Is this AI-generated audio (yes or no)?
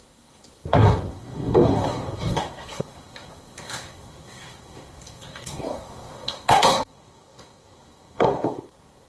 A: yes